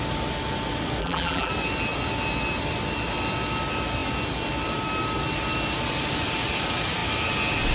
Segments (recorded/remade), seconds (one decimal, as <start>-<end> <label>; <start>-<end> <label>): 0.0-1.0 recorded; 1.0-1.5 remade; 1.5-7.7 recorded